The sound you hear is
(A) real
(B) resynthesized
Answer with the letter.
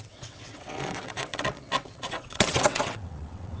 B